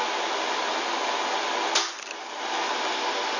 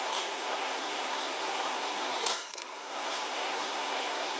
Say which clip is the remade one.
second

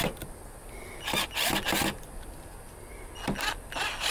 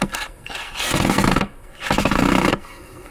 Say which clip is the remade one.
second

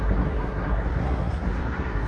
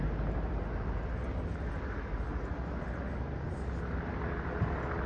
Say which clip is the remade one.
first